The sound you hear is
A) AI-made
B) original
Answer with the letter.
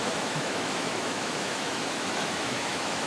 A